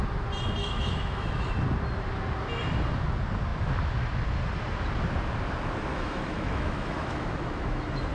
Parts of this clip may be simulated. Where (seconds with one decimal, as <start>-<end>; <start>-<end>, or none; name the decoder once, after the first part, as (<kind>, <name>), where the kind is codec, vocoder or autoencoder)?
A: 0.6-1.5 (autoencoder, DAC-VAE); 5.9-8.1